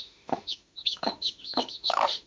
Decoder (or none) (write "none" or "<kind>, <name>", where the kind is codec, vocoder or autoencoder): autoencoder, DAC-VAE